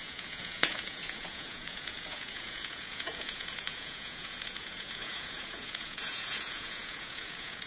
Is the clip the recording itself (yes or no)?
no